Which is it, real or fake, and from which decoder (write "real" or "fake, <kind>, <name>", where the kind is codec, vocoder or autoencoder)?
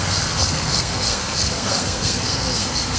fake, codec, SNAC